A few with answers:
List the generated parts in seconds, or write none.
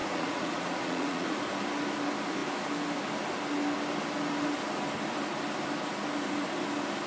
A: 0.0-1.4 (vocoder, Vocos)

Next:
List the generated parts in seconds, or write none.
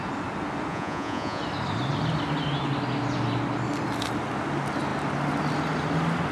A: 0.7-1.4 (vocoder, Vocos)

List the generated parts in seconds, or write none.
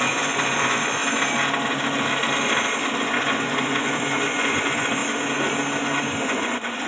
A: 0.0-1.0 (vocoder, Vocos); 3.0-5.0; 6.0-6.9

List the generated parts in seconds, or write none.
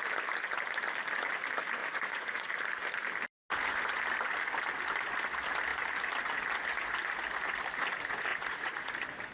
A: 1.8-2.5 (vocoder, Vocos); 8.3-8.9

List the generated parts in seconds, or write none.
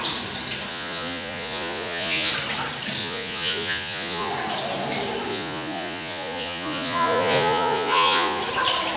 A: 0.7-2.3 (vocoder, Vocos); 3.0-4.3; 5.3-8.4